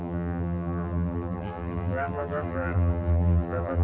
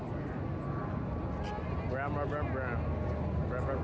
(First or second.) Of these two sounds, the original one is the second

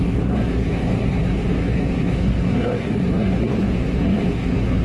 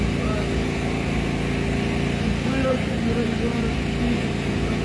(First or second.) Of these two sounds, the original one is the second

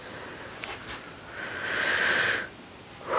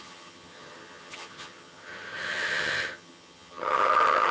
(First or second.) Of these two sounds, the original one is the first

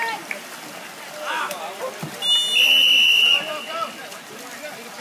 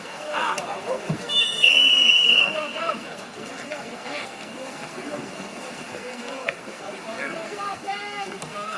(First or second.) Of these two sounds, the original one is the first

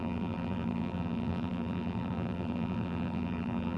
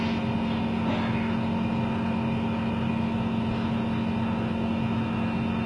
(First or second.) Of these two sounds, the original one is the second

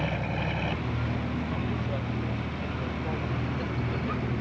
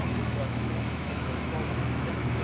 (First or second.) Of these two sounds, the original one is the first